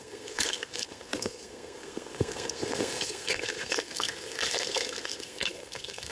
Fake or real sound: fake